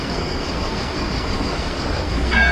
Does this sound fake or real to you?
fake